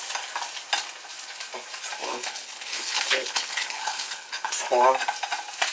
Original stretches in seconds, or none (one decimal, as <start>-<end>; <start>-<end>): 0.0-2.0; 4.5-5.7